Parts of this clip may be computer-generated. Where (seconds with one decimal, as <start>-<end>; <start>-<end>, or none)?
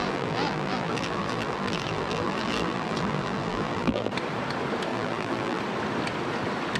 0.0-4.1; 4.9-5.6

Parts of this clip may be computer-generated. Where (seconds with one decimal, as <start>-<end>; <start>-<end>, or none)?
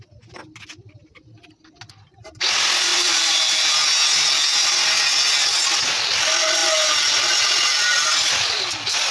2.9-3.7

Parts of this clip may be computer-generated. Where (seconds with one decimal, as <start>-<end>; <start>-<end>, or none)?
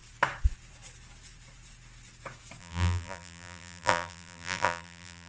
2.6-5.3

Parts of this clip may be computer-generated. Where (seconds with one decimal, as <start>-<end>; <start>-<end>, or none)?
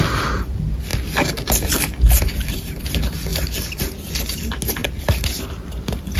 4.8-5.4